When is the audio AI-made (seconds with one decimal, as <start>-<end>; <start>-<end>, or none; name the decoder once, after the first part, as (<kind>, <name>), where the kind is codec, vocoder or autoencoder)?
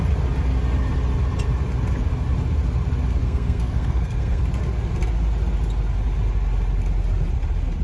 3.2-4.4 (codec, SNAC)